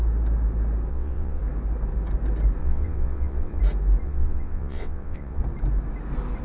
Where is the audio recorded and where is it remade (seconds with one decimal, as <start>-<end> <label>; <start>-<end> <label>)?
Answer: 0.0-0.9 recorded; 0.9-1.4 remade; 1.4-2.6 recorded; 2.6-3.6 remade; 3.6-4.0 recorded; 4.0-5.4 remade; 5.4-6.4 recorded